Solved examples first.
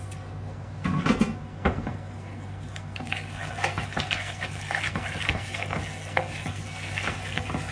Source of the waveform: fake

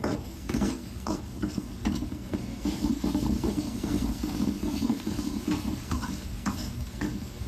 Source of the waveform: fake